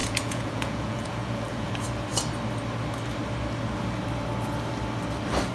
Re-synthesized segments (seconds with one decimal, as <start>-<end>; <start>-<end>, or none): 0.0-1.7